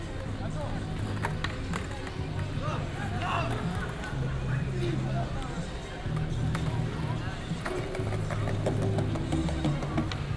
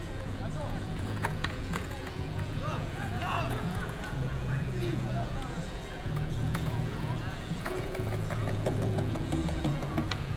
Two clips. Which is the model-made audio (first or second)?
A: second